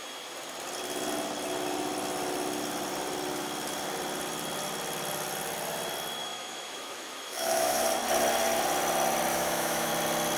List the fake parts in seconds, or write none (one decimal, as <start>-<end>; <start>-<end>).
6.2-7.8; 9.3-9.9